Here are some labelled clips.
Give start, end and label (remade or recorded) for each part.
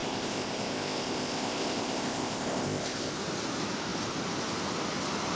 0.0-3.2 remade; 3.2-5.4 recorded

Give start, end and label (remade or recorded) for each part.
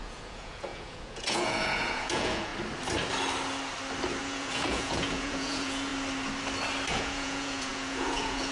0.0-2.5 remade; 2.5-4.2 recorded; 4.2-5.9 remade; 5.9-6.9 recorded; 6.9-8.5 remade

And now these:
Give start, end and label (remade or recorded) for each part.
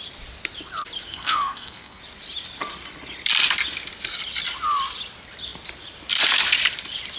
0.0-1.1 recorded; 1.1-2.0 remade; 2.0-7.2 recorded